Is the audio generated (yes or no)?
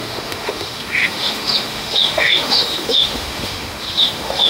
yes